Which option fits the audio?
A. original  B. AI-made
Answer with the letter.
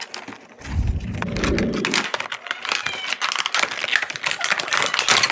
A